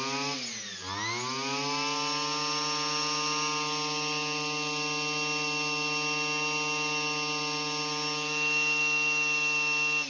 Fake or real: real